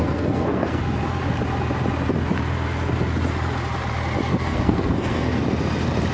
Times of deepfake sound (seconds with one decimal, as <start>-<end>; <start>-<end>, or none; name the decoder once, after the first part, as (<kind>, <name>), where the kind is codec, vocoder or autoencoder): 0.0-0.8 (codec, SNAC); 4.3-5.4